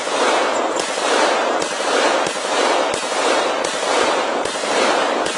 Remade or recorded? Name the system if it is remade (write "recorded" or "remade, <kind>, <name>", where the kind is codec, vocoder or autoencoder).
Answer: remade, vocoder, BigVGAN v2